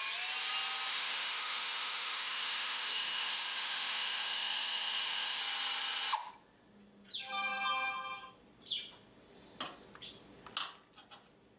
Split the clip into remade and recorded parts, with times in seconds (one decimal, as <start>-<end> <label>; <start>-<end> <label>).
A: 0.0-0.9 recorded; 0.9-5.4 remade; 5.4-11.6 recorded